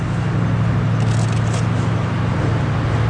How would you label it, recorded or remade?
recorded